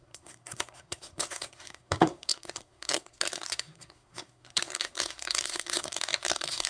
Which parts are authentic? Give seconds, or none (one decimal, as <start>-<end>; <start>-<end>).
none